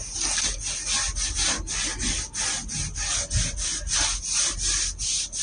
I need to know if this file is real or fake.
real